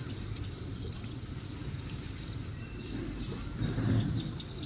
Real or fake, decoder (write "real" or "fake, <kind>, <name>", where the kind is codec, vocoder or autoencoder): real